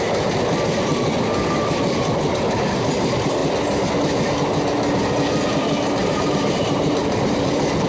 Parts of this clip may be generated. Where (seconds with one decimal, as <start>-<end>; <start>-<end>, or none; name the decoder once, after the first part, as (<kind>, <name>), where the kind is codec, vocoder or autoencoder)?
6.0-7.5 (vocoder, BigVGAN v2)